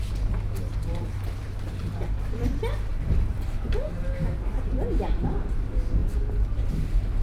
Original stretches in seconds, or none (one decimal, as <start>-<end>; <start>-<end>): 0.0-0.7; 1.8-2.9; 4.7-6.0